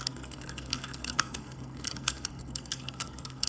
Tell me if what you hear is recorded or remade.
remade